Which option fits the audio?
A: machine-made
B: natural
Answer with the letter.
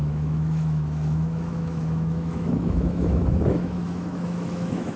A